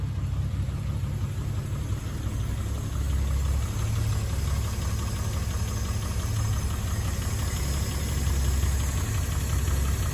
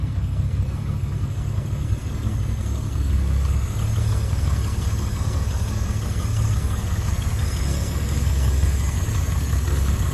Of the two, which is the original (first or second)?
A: first